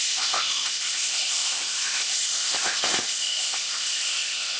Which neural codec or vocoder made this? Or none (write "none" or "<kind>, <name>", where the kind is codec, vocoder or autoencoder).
codec, ZipCodec